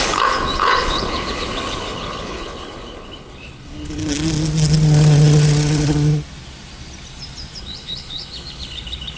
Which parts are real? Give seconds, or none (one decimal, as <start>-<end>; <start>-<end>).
4.0-7.6